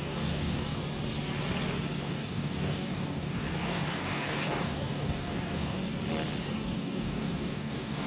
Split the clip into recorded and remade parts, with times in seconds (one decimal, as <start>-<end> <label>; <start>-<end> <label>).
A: 0.0-0.8 remade; 0.8-2.0 recorded; 2.0-5.8 remade; 5.8-6.4 recorded; 6.4-8.1 remade